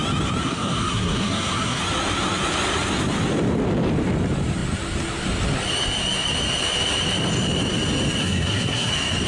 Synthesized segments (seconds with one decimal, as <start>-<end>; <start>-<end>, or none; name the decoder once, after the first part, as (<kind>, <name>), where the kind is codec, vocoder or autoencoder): 0.4-1.8 (codec, SNAC); 8.2-8.9